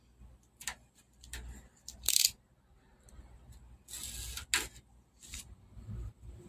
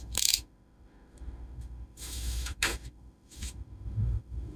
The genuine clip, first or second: first